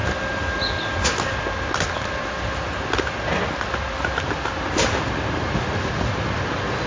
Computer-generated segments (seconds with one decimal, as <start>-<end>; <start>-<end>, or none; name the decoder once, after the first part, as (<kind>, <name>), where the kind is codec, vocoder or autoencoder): none